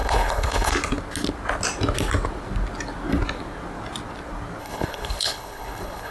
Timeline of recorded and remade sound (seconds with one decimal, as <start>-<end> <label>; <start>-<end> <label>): 0.0-0.7 remade; 0.7-4.6 recorded; 4.6-6.1 remade